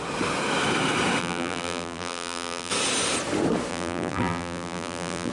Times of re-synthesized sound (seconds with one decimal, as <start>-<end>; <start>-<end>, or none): 1.2-2.7; 3.7-5.3

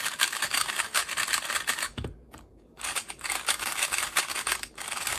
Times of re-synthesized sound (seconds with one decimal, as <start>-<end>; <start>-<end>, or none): 0.0-1.0; 1.7-5.2